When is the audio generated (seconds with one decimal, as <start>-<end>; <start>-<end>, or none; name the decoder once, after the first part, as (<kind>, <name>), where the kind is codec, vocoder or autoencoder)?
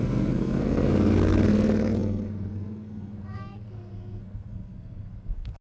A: 0.0-5.6 (codec, SNAC)